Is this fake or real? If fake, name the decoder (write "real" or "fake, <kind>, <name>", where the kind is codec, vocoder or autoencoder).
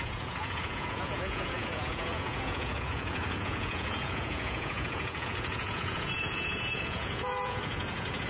fake, vocoder, Vocos